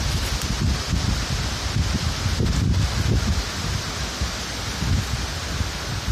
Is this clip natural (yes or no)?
yes